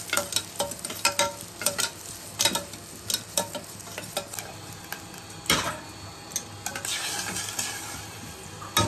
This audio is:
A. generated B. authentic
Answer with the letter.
B